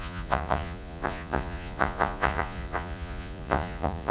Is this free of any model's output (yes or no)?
no